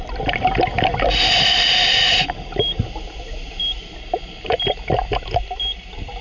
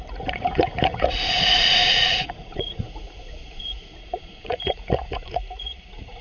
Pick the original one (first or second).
first